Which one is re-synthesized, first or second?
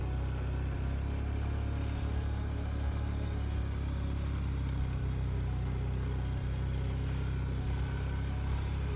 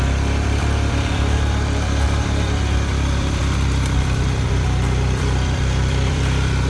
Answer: second